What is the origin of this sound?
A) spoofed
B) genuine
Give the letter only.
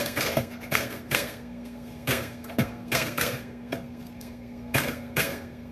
A